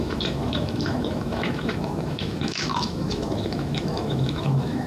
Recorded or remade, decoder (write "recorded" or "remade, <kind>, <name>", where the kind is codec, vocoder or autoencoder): remade, autoencoder, DAC-VAE